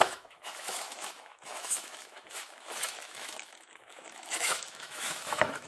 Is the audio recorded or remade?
remade